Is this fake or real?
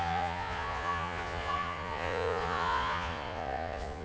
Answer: fake